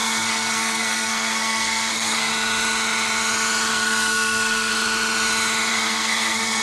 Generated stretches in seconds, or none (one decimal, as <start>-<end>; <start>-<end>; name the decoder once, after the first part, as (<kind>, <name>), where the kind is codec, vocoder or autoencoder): 0.0-2.3 (codec, SNAC); 3.7-4.7; 5.7-6.6